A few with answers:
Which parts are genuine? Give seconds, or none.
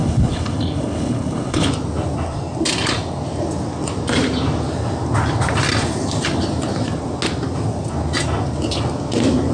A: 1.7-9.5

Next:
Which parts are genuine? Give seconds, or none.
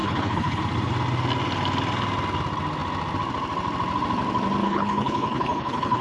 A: 0.6-4.6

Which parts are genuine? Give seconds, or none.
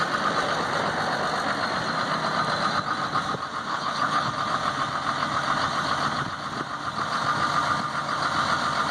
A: 0.0-3.7; 4.3-8.9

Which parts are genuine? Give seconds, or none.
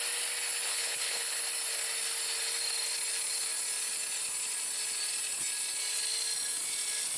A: 0.0-0.7; 1.4-7.2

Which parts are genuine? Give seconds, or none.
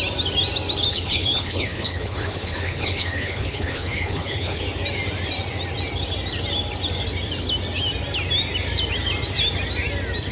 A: 0.0-0.9; 4.6-10.3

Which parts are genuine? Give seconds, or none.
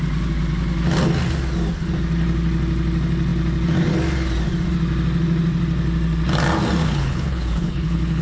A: 0.0-6.8